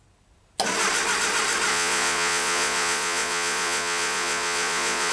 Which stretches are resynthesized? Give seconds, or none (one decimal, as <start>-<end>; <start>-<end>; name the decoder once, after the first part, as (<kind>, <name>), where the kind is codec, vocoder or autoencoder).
1.7-5.1 (vocoder, Vocos)